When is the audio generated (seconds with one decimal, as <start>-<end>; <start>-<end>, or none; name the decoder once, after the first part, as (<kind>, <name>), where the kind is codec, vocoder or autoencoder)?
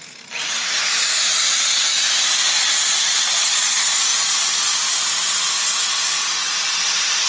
none